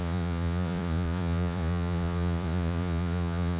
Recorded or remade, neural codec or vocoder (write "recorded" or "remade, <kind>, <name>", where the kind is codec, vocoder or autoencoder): remade, vocoder, Vocos